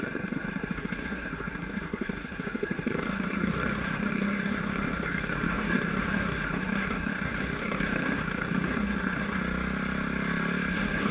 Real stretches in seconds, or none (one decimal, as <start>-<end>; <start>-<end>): 9.4-10.7